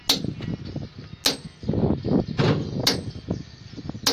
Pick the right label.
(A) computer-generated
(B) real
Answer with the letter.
B